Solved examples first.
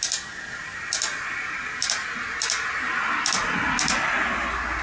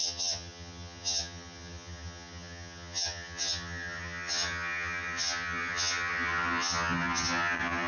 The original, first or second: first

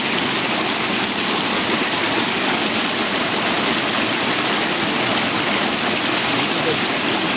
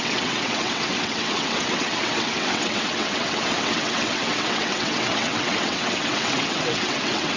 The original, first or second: first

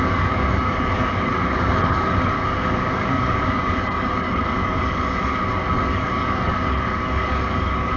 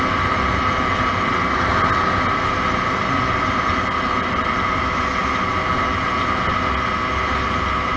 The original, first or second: second